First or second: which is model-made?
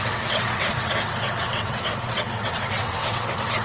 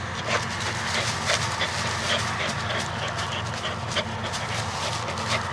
first